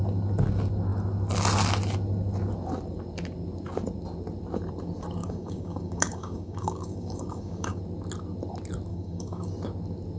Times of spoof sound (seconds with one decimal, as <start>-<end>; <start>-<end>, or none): 5.2-7.8; 8.9-9.5